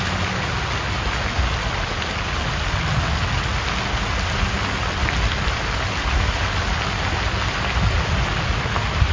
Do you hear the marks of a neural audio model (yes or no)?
no